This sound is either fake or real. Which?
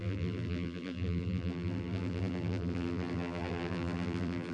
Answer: fake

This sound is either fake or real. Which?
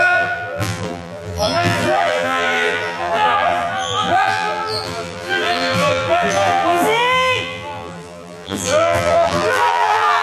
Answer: fake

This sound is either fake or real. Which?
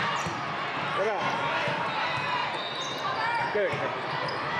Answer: real